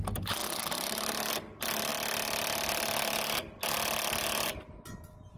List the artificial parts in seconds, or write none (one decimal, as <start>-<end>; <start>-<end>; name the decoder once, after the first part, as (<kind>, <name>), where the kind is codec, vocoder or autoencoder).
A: none